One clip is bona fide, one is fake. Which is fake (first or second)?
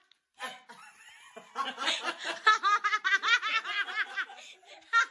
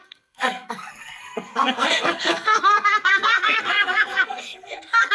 second